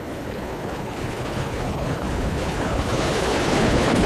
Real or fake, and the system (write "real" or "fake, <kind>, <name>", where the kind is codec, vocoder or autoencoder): fake, codec, HILCodec